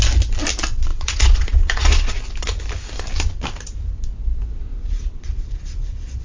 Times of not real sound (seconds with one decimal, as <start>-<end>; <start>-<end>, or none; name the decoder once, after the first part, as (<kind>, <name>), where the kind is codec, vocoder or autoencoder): 0.9-2.2 (vocoder, Vocos); 4.7-6.2